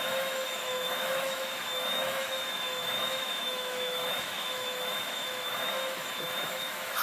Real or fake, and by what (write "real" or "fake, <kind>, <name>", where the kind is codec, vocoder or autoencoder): fake, autoencoder, DAC-VAE